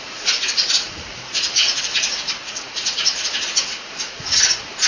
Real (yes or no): no